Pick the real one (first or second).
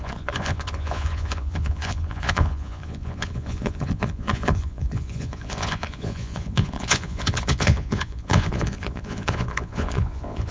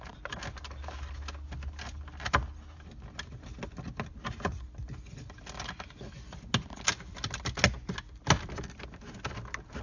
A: second